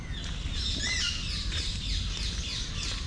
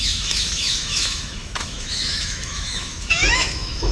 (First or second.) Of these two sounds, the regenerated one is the second